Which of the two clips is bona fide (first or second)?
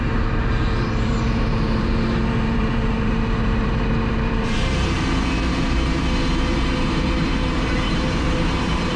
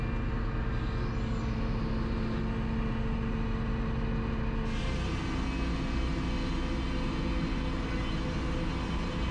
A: second